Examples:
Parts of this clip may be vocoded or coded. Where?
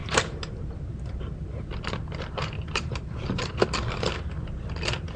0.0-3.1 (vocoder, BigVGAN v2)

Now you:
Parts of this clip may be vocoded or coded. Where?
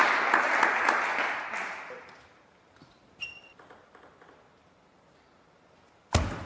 none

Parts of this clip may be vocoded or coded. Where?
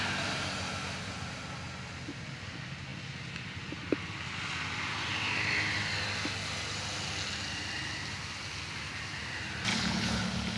9.7-10.2 (codec, HILCodec)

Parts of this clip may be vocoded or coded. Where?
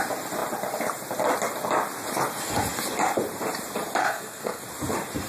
4.0-4.6 (codec, SNAC)